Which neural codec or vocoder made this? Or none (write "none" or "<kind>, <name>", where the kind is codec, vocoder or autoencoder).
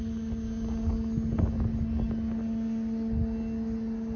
none